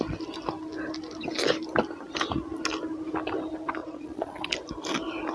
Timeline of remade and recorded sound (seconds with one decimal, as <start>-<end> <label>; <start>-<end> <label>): 0.0-3.8 recorded; 3.8-4.5 remade; 4.5-5.3 recorded